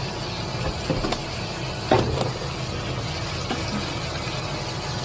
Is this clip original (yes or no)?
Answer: yes